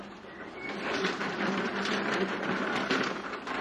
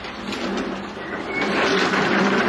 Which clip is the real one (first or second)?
second